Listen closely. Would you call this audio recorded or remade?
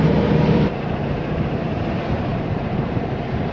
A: remade